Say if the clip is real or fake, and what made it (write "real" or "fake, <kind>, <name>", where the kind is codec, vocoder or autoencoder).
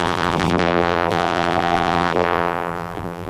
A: fake, vocoder, BigVGAN v2